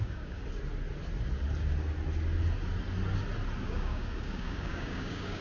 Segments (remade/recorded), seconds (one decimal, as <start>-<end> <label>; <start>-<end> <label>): 0.0-0.4 remade; 0.4-3.6 recorded; 3.6-5.4 remade